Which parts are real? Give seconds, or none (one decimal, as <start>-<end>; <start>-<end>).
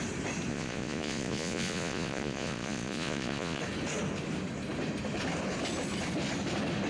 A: 0.0-0.5; 3.6-6.9